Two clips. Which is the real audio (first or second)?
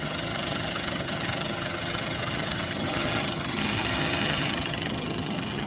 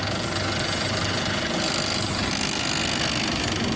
second